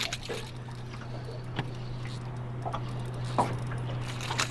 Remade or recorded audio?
recorded